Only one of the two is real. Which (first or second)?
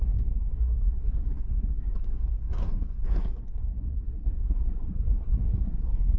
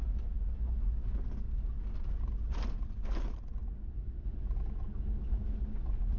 second